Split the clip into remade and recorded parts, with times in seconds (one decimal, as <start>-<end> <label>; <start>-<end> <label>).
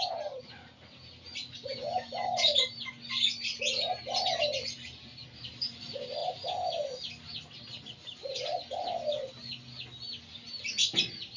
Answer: 0.0-11.4 recorded